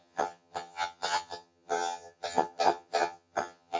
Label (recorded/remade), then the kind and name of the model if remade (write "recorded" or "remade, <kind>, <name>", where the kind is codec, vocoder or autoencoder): remade, vocoder, HiFi-GAN